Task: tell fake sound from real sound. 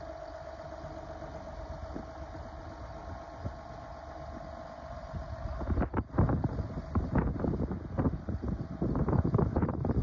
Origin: real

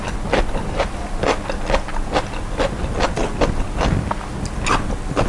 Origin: real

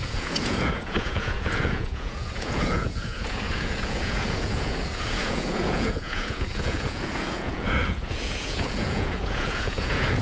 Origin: fake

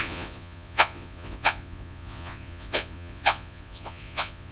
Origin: fake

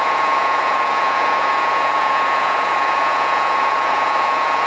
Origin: fake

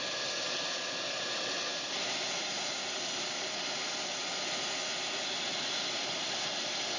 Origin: real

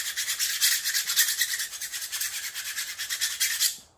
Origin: real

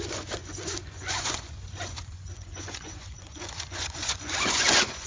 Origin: fake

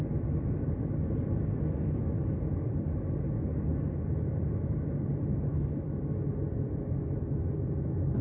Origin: real